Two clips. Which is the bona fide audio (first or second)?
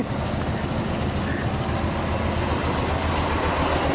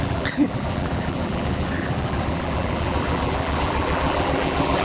first